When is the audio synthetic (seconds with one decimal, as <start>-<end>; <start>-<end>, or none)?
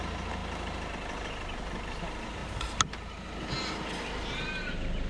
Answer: none